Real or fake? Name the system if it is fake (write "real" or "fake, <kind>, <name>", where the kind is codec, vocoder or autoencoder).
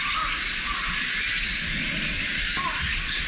real